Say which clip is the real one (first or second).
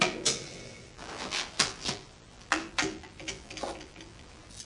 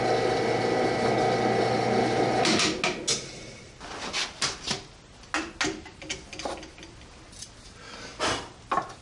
second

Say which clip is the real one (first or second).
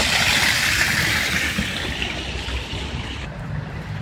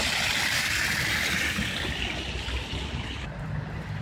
second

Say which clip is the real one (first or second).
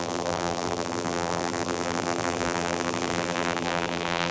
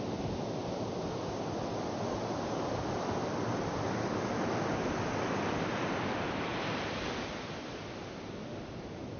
second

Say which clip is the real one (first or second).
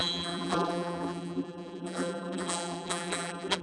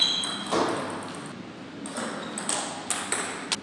second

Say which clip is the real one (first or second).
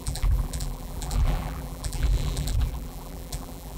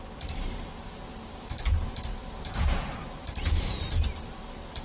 second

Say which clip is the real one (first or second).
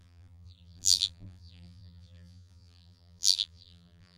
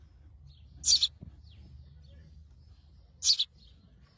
second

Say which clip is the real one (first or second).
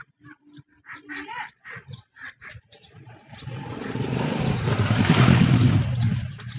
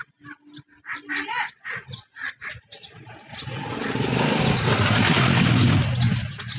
second